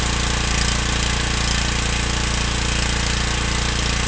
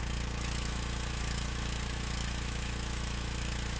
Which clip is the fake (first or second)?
second